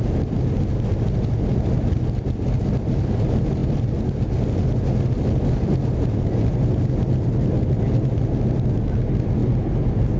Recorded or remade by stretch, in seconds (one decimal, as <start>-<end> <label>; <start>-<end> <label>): 0.0-10.2 recorded

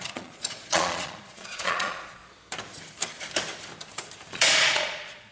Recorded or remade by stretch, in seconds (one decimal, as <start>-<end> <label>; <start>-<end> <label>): 0.0-2.2 remade; 2.2-4.3 recorded; 4.3-5.3 remade

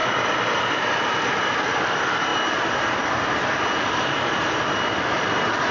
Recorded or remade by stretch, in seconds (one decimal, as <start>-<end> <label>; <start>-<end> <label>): 0.0-1.0 remade; 1.0-5.7 recorded

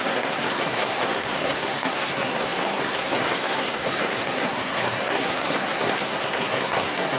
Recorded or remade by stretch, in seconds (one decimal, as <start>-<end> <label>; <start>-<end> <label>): 0.0-7.2 remade